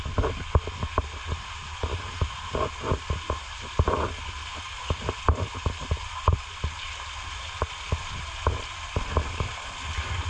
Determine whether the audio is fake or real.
real